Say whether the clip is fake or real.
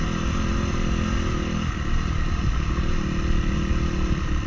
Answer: real